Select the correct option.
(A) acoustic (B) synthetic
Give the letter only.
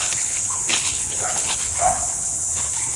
B